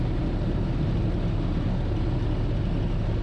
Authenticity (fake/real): real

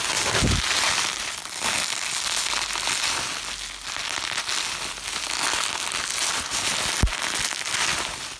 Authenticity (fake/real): real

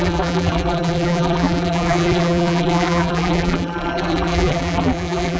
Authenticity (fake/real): fake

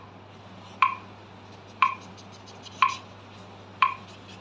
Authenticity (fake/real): real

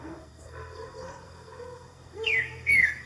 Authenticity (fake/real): fake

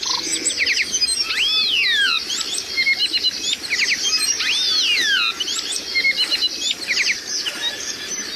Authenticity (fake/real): real